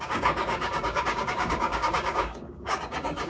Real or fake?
fake